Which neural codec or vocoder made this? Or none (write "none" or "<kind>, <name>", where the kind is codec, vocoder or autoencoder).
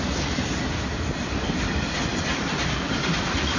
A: none